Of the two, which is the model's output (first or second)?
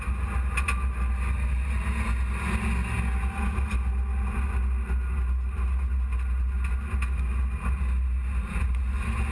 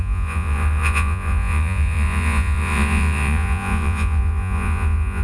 second